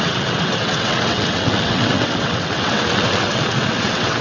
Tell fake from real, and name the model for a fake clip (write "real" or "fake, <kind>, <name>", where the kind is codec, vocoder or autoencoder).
fake, vocoder, WaveNeXt